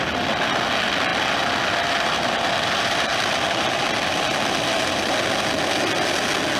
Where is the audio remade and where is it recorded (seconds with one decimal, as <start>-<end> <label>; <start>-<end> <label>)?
0.0-1.1 recorded; 1.1-5.1 remade; 5.1-6.6 recorded